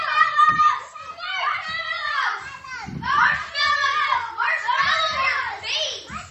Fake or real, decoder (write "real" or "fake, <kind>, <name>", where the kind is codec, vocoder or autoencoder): real